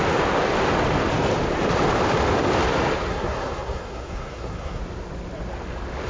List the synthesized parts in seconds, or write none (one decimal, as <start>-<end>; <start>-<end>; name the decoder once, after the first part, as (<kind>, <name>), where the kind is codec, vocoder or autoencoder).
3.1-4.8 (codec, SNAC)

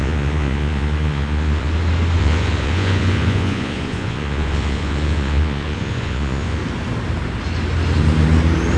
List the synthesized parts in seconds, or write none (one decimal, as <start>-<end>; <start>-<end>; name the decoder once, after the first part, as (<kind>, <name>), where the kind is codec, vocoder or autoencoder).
0.0-1.7 (vocoder, Vocos); 2.2-6.6

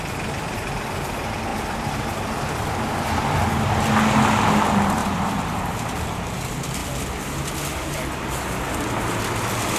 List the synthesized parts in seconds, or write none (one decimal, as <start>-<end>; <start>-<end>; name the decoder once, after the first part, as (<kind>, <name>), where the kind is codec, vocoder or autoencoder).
1.5-3.4 (vocoder, BigVGAN v2); 5.0-5.9

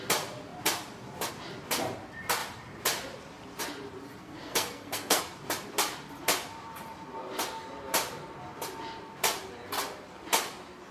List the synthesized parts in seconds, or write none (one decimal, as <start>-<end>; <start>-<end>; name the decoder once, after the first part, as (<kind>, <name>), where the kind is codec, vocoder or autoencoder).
4.2-5.2 (codec, SNAC)